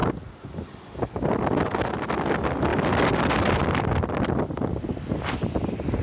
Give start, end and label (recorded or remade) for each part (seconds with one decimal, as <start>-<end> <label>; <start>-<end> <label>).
0.0-6.0 recorded